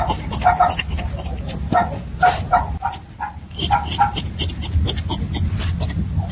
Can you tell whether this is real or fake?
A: real